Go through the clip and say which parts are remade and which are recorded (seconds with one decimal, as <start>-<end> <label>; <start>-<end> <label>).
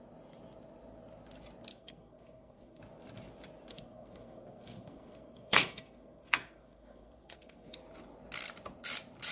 0.0-1.7 recorded; 1.7-2.8 remade; 2.8-3.7 recorded; 3.7-7.8 remade; 7.8-9.3 recorded